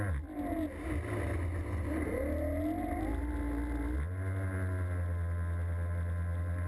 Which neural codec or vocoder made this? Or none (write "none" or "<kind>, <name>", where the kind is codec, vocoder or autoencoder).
none